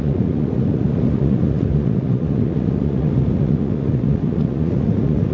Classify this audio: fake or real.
fake